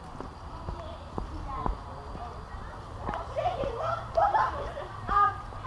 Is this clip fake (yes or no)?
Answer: no